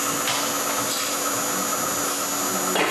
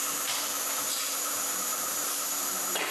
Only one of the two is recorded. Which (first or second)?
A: first